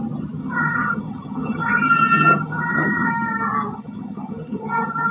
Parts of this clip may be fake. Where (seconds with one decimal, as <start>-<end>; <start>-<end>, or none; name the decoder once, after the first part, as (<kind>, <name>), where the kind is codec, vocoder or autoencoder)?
0.4-3.1 (vocoder, HiFi-GAN); 3.7-5.1